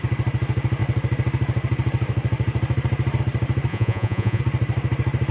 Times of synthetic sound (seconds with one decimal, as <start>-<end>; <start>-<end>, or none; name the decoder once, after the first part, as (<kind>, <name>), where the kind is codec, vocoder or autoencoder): 3.7-4.4 (vocoder, Vocos)